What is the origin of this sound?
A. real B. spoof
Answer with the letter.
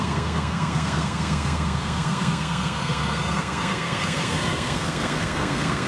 B